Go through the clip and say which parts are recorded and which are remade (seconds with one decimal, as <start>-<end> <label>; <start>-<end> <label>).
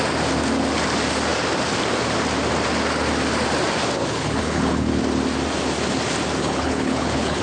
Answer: 0.0-4.0 recorded; 4.0-5.0 remade; 5.0-6.4 recorded; 6.4-7.4 remade